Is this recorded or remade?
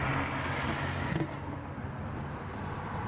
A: recorded